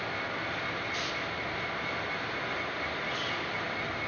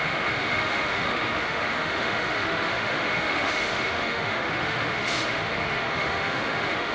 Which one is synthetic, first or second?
second